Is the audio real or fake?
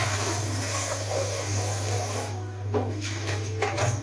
fake